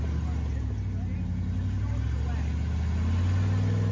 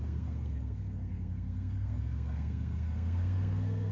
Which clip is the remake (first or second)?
second